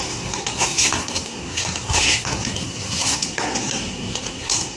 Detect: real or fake fake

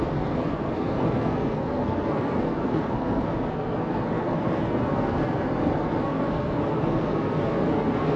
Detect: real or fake fake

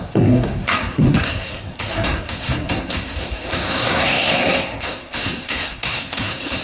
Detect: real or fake fake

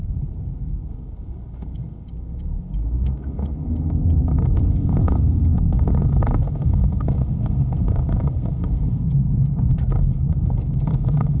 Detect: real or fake fake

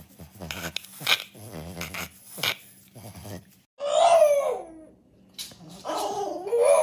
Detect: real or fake real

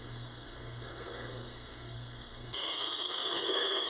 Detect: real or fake fake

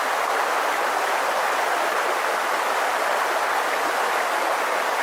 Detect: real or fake real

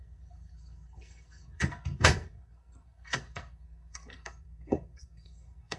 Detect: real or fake fake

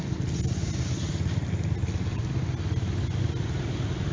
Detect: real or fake real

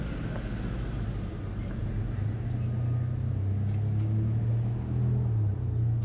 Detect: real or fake real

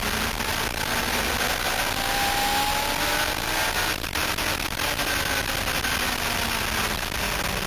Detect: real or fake real